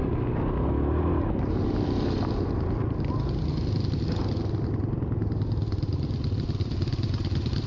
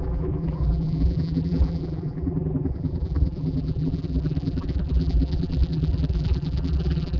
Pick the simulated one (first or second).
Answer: second